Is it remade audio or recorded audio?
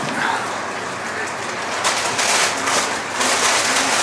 recorded